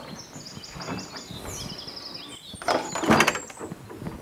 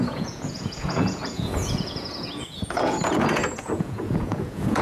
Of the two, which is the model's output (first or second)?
second